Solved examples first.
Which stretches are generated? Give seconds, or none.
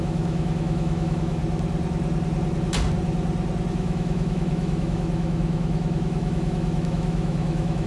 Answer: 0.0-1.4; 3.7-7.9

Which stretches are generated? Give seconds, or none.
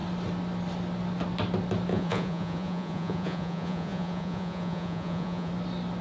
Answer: 1.9-5.5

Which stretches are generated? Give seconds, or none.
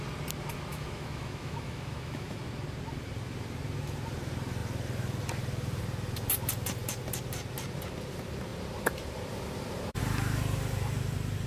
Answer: 0.7-2.4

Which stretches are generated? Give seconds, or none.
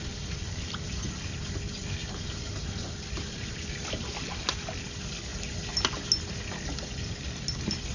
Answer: none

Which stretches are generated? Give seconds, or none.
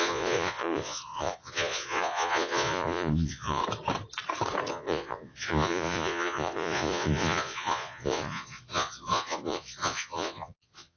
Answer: 0.0-3.6; 4.7-11.0